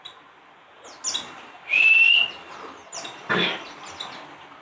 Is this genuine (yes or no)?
yes